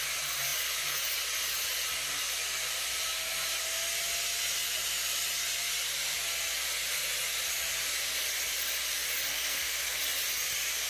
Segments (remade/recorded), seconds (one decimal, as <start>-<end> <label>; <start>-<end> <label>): 0.0-9.3 recorded; 9.3-10.0 remade; 10.0-10.9 recorded